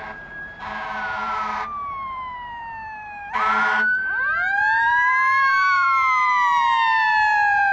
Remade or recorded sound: remade